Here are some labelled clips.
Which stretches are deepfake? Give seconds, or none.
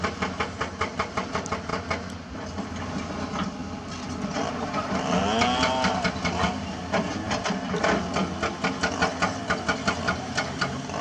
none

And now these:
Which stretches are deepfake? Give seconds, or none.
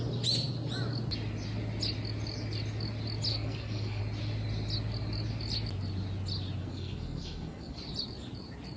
3.3-4.0 (codec, SNAC); 6.6-7.8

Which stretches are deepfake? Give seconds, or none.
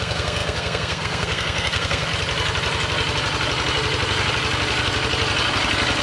0.0-2.1 (codec, SNAC)